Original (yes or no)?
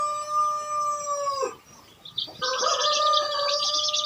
yes